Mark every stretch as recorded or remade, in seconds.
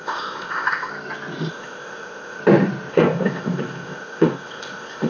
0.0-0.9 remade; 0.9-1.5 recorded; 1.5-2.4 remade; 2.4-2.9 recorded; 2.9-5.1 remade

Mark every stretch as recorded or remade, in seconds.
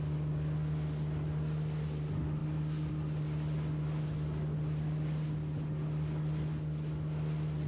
0.0-7.7 recorded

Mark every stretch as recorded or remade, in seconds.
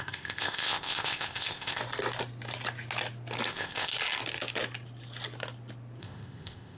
0.0-1.8 remade; 1.8-3.5 recorded; 3.5-3.9 remade; 3.9-6.0 recorded; 6.0-6.8 remade